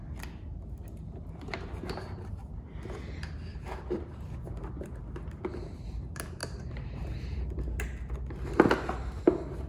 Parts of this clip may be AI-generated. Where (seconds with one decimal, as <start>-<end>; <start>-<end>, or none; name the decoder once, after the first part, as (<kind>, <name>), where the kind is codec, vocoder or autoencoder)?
3.5-4.3 (vocoder, BigVGAN v2); 6.4-7.8